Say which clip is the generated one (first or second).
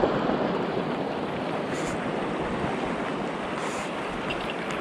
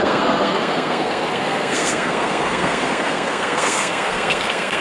second